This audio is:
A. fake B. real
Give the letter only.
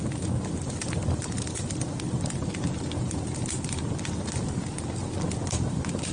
B